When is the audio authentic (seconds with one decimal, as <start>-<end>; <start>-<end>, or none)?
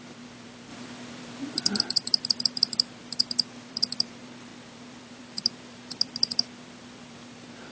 3.0-3.7